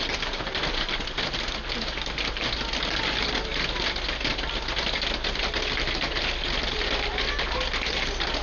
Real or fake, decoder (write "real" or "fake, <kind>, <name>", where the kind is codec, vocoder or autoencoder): real